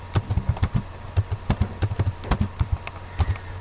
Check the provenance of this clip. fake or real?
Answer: real